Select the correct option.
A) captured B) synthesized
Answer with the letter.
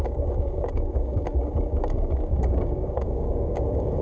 B